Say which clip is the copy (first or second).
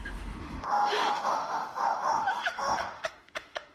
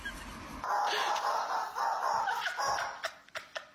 first